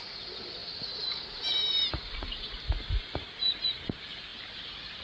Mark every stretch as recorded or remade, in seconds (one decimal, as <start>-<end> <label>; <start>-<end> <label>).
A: 0.0-5.0 recorded